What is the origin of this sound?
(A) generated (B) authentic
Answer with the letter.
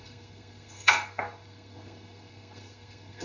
A